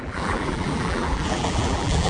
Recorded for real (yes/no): no